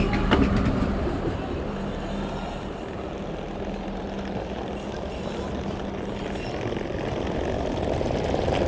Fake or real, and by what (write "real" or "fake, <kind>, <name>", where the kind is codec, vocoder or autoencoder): real